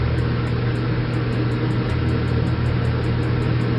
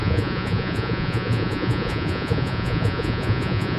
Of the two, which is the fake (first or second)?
second